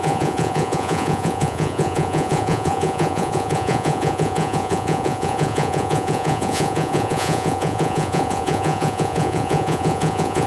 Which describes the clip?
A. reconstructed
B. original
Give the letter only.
A